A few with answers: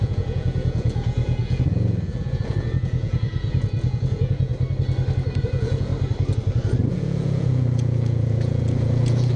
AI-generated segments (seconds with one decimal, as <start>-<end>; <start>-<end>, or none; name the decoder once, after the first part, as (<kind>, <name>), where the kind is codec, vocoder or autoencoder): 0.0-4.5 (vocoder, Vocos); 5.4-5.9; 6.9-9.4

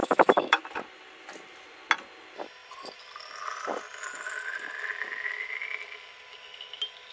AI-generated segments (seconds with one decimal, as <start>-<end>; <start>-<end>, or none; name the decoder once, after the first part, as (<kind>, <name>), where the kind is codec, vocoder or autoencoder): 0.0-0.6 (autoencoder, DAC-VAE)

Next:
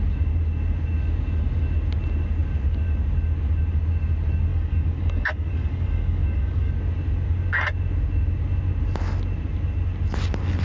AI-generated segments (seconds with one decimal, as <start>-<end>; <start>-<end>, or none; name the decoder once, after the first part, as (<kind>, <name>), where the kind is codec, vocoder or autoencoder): 4.5-6.7 (codec, DAC)

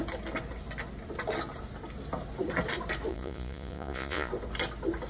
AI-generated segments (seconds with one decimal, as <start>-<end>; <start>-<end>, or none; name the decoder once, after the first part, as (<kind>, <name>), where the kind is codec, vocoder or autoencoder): 3.1-4.3 (vocoder, Vocos)